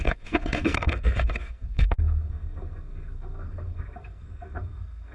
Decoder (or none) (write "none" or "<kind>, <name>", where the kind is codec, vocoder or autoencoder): codec, SNAC